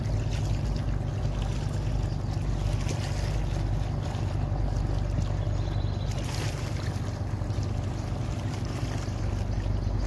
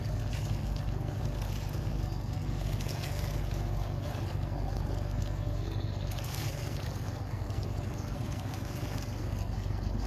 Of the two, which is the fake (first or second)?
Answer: second